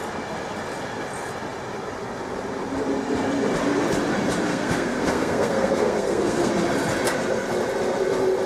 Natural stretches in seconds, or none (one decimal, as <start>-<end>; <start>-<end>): 0.0-4.5; 6.5-8.5

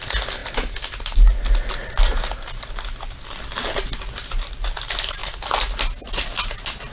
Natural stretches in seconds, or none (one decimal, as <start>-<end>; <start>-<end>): 0.0-6.9

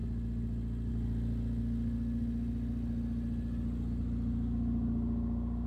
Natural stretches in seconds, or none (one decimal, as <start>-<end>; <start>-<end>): 0.0-5.7